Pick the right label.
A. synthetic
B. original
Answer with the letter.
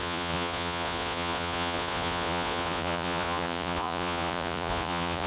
A